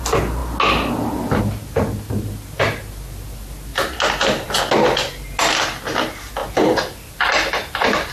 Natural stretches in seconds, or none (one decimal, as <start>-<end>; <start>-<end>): 0.0-3.7; 4.6-6.4; 7.5-8.1